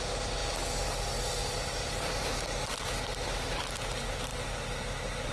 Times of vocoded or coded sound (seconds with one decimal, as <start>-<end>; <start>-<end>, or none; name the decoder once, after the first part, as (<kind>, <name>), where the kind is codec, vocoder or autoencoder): none